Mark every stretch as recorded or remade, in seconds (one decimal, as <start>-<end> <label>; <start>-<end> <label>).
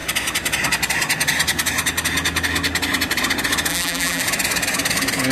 0.0-3.7 recorded; 3.7-4.2 remade; 4.2-5.3 recorded